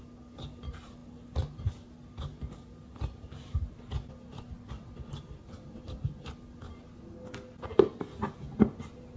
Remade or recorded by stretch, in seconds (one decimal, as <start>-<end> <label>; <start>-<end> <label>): 0.0-9.2 recorded